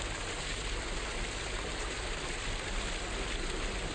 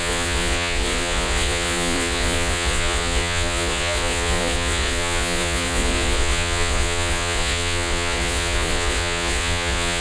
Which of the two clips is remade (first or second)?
second